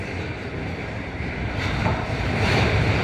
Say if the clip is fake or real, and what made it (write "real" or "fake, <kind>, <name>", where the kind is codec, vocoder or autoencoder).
fake, vocoder, BigVGAN v2